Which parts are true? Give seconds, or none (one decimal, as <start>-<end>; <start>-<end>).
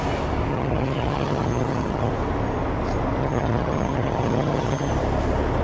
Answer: 0.0-0.5; 2.1-3.2; 4.9-5.6